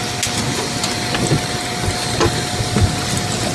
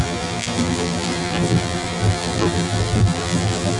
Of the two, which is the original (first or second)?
first